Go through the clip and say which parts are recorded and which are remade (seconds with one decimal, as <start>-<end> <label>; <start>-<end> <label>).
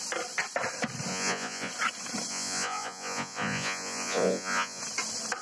0.0-1.1 recorded; 1.1-1.7 remade; 1.7-2.3 recorded; 2.3-4.8 remade; 4.8-5.4 recorded